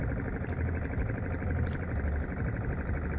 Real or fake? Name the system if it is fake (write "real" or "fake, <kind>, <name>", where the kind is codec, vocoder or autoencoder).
real